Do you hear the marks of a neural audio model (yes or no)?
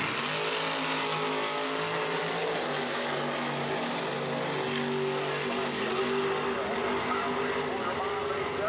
no